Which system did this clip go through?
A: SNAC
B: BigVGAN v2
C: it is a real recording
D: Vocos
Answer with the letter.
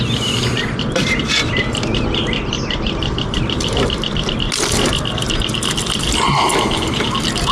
C